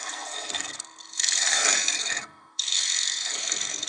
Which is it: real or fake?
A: fake